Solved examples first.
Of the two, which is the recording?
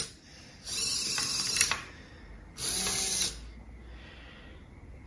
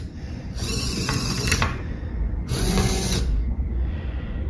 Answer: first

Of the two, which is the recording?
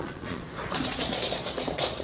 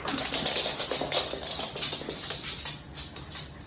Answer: second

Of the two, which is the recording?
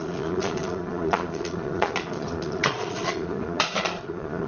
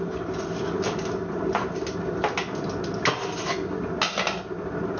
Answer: second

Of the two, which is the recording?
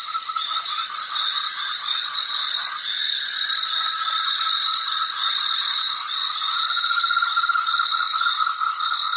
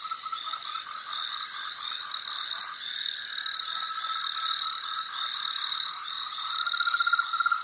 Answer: second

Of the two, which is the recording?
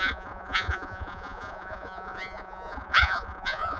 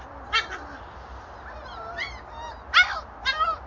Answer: second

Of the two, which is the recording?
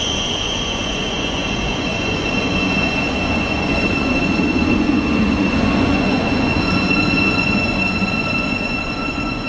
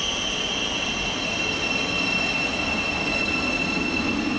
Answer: second